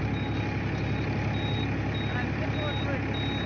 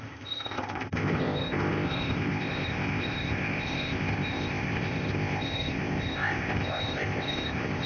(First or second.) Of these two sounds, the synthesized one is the second